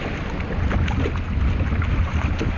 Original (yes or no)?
yes